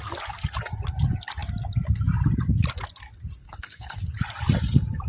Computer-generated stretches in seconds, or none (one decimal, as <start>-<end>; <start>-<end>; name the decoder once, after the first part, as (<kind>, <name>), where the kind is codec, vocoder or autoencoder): 3.4-4.0 (codec, SNAC)